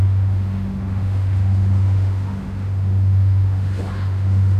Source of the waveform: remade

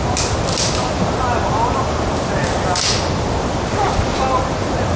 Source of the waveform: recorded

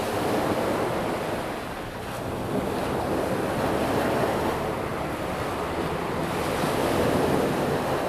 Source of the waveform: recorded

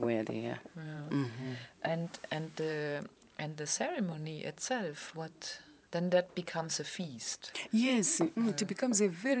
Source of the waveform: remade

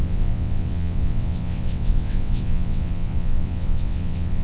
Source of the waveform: remade